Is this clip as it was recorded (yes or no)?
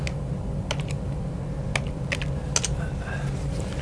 yes